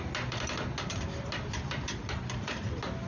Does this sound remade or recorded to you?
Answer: recorded